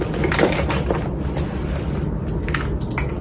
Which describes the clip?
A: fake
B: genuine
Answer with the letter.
B